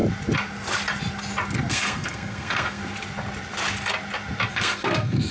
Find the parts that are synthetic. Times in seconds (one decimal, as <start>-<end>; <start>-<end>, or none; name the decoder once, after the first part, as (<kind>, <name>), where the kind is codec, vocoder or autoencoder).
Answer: 1.7-2.8 (codec, SNAC); 4.5-5.3